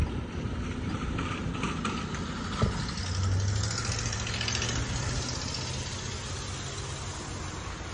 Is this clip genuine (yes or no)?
yes